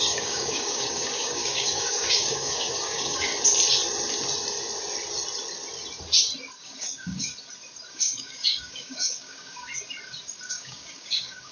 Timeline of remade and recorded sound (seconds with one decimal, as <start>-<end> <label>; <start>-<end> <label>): 0.0-3.3 remade; 3.3-6.6 recorded; 6.6-7.3 remade; 7.3-7.9 recorded; 7.9-9.7 remade; 9.7-10.5 recorded; 10.5-11.5 remade